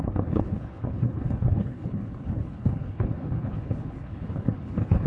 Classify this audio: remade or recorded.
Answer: remade